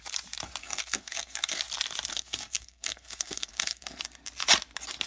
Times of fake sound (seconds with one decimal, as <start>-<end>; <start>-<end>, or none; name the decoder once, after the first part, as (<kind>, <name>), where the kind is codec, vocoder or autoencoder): 0.6-1.6 (codec, SNAC); 2.1-4.0